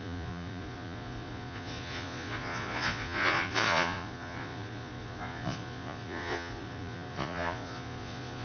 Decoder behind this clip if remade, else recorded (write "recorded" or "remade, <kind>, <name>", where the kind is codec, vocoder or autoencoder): remade, vocoder, Vocos